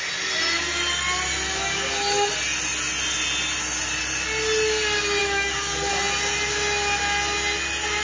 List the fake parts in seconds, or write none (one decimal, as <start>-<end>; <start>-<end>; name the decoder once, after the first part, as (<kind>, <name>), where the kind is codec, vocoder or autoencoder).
1.5-2.3 (codec, DAC); 5.2-5.9